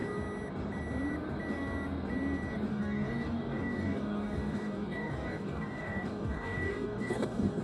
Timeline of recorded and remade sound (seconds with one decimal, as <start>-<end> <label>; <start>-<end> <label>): 0.0-2.7 recorded; 2.7-7.6 remade